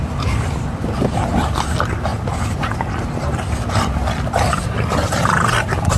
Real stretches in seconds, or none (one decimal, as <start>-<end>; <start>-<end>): 0.0-6.0